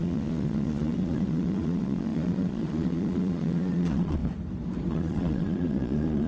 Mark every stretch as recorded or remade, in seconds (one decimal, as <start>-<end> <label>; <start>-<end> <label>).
0.0-4.2 remade; 4.2-4.9 recorded; 4.9-6.3 remade